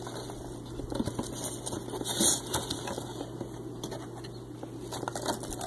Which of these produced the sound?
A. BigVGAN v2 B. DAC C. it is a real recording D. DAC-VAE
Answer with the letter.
C